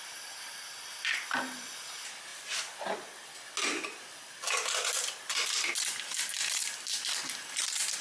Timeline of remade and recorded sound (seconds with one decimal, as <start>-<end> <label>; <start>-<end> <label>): 0.0-0.9 recorded; 0.9-1.7 remade; 1.7-6.3 recorded; 6.3-6.9 remade; 6.9-8.0 recorded